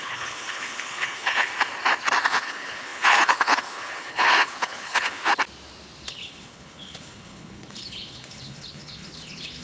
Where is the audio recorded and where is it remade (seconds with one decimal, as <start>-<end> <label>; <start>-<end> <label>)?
0.0-1.5 remade; 1.5-2.3 recorded; 2.3-5.3 remade; 5.3-6.0 recorded; 6.0-9.6 remade